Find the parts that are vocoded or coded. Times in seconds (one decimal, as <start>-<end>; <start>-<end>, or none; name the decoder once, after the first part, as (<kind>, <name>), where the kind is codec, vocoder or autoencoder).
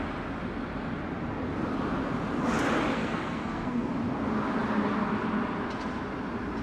2.9-3.9 (codec, SNAC)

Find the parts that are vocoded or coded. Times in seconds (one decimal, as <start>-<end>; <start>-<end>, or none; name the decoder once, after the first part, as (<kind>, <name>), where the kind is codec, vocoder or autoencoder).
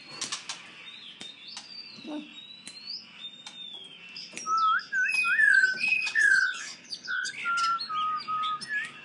5.8-7.3 (codec, HILCodec)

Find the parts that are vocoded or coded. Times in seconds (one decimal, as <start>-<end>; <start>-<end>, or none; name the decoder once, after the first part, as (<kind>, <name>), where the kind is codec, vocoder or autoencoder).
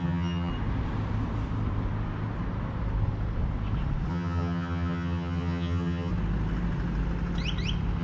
0.0-0.5 (vocoder, HiFi-GAN); 4.1-6.1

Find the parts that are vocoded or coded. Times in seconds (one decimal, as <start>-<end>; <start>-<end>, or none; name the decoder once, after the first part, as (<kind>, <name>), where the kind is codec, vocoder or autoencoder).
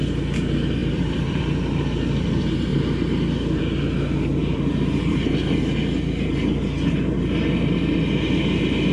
0.8-1.4 (vocoder, BigVGAN v2); 4.4-5.3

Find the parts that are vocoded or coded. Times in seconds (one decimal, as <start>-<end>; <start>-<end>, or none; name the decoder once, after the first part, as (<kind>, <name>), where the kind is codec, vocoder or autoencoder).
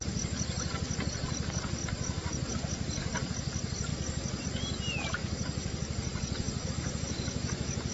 1.8-2.5 (vocoder, BigVGAN v2); 5.2-6.7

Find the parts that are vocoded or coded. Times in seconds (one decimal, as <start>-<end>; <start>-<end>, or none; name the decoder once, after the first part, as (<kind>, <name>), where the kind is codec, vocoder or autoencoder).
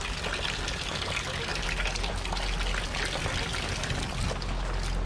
none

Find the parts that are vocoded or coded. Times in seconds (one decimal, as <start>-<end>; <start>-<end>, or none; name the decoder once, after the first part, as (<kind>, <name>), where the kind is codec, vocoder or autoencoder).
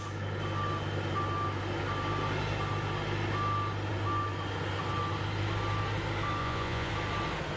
6.4-6.9 (vocoder, Vocos)